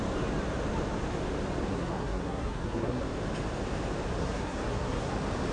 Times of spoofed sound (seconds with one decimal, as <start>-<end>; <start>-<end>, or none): 1.7-3.0; 4.2-5.1